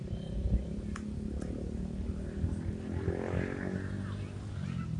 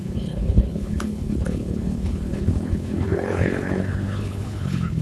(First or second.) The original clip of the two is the first